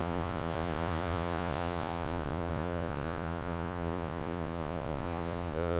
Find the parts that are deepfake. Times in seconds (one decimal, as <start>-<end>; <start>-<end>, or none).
0.0-5.8